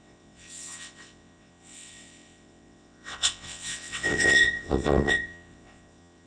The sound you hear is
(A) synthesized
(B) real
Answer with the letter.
A